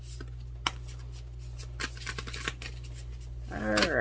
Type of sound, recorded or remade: recorded